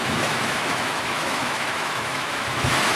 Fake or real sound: fake